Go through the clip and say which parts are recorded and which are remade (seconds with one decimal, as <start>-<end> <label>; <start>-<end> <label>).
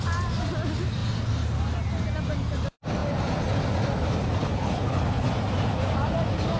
0.0-4.4 recorded; 4.4-5.3 remade; 5.3-6.6 recorded